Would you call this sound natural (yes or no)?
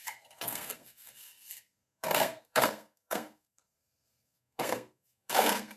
no